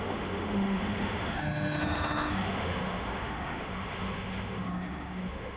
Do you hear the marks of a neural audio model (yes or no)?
yes